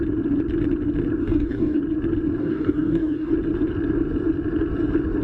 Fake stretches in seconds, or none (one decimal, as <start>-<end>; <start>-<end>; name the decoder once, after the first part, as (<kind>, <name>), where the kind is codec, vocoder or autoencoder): 1.2-1.8 (codec, DAC); 2.4-3.3